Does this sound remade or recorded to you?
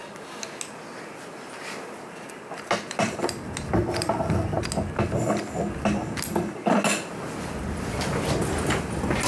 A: recorded